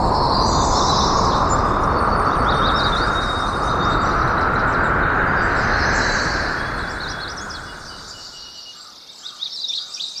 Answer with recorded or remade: recorded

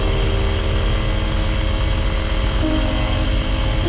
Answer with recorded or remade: recorded